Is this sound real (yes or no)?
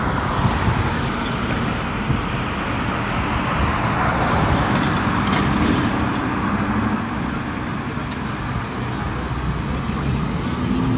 yes